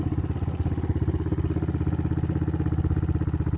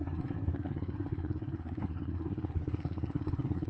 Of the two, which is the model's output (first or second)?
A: second